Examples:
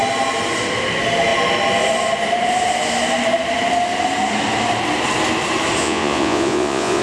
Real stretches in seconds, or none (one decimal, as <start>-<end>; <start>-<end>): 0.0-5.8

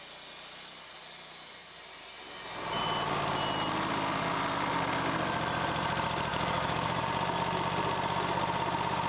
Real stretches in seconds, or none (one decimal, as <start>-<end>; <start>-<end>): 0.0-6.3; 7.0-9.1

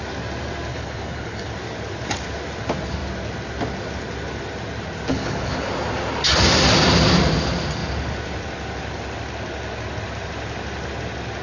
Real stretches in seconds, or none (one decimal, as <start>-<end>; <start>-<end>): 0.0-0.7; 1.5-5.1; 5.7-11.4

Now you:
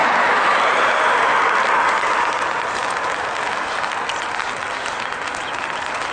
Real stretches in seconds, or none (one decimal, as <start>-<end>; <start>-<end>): 0.0-6.1